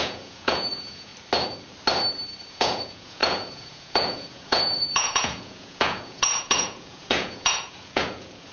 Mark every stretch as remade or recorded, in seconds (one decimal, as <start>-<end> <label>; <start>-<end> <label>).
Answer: 0.0-1.1 remade; 1.1-2.5 recorded; 2.5-8.5 remade